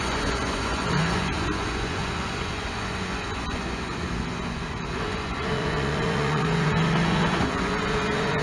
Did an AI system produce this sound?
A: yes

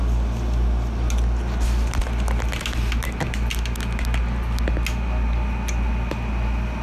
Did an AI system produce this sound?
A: no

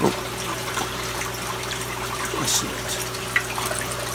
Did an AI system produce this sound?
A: no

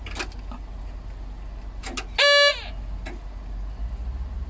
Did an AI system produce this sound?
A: no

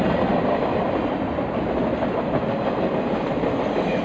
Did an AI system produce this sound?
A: no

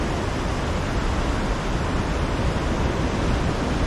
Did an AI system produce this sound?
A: no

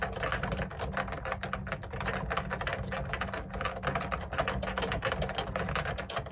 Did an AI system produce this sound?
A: no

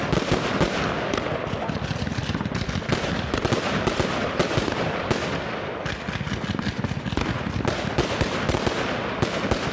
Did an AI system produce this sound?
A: no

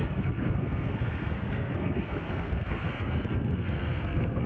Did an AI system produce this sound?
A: yes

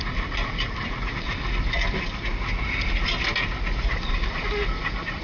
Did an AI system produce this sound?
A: no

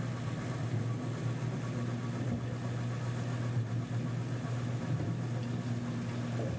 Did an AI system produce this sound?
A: no